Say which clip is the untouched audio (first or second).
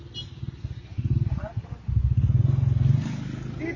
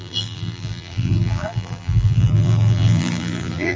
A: first